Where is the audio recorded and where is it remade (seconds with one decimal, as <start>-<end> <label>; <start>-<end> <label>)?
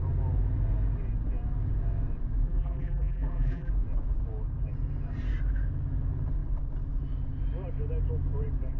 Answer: 0.0-2.4 recorded; 2.4-3.7 remade; 3.7-8.8 recorded